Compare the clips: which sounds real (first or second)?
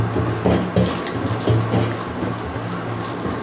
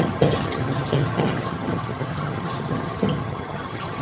first